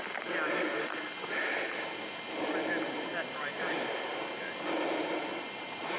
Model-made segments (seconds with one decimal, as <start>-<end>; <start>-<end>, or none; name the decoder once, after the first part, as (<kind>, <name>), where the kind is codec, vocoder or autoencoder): 0.0-6.0 (vocoder, BigVGAN v2)